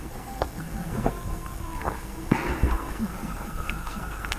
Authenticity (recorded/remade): remade